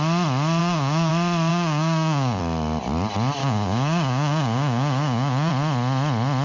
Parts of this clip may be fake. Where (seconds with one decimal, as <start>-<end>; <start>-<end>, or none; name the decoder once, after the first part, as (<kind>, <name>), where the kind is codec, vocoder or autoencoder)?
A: 0.6-1.1 (codec, DAC); 1.5-2.4; 3.4-5.5